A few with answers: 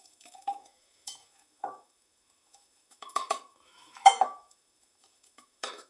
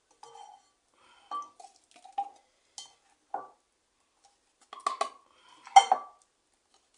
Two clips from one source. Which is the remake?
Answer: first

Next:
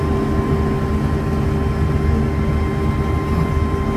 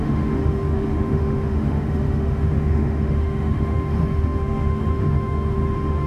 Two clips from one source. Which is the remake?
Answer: second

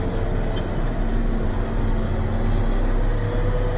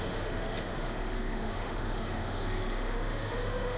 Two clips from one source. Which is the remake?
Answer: second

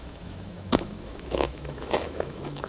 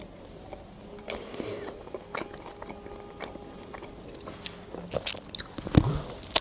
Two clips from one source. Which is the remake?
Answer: first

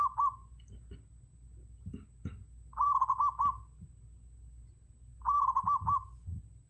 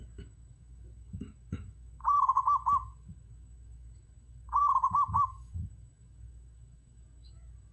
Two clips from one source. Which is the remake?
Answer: second